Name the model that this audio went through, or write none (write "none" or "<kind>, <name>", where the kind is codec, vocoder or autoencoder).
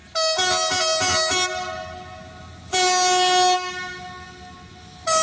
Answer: none